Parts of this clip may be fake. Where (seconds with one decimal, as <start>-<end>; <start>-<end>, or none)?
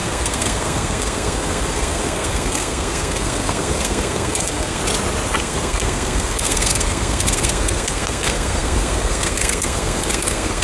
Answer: 0.0-4.8; 5.4-10.6